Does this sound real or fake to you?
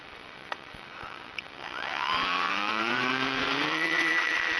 fake